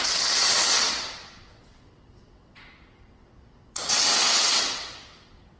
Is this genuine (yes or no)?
no